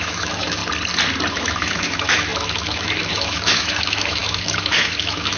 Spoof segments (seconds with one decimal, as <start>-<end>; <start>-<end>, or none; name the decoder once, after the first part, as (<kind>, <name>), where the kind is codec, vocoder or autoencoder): 0.0-0.6 (autoencoder, DAC-VAE); 1.3-5.4